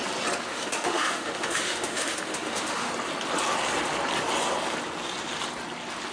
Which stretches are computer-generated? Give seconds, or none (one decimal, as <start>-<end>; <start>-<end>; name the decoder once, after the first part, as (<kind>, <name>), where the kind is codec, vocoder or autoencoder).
0.5-2.9 (autoencoder, DAC-VAE)